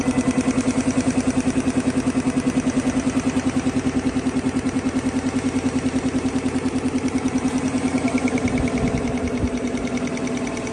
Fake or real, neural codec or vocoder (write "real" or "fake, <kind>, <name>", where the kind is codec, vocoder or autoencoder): real